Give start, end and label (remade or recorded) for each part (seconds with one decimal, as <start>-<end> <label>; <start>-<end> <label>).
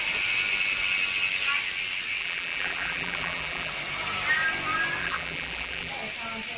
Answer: 0.0-2.2 recorded; 2.2-3.7 remade; 3.7-5.0 recorded; 5.0-5.9 remade; 5.9-6.6 recorded